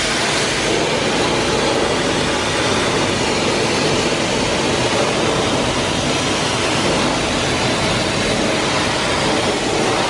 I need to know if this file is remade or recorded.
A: recorded